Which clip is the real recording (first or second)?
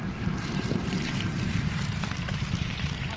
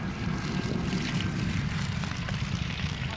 second